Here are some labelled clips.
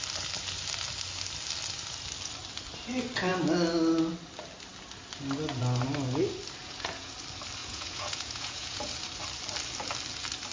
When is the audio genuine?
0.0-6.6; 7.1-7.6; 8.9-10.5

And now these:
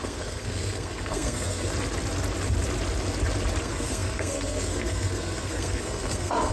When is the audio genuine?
1.7-3.6

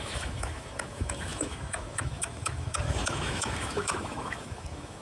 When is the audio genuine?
none

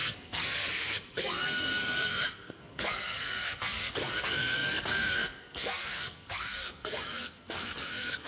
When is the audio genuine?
none

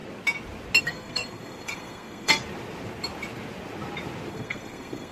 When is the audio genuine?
0.0-0.8; 2.4-4.3

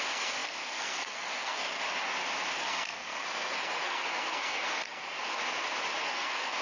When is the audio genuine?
1.8-2.5; 5.4-6.0

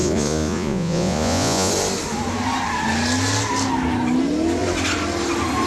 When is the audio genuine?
1.7-5.7